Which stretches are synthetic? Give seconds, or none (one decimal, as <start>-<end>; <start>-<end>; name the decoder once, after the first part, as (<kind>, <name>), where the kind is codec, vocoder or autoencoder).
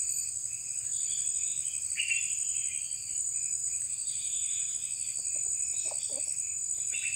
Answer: 3.6-4.7 (vocoder, BigVGAN v2)